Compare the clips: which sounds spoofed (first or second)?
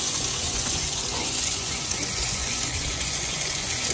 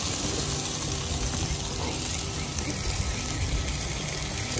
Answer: first